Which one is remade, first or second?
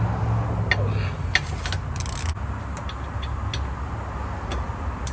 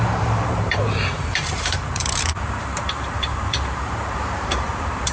second